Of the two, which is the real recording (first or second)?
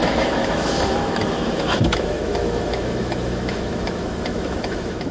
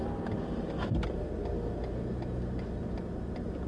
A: second